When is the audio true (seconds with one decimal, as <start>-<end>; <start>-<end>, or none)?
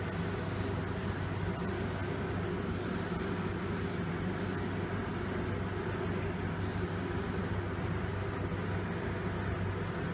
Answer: 0.0-10.1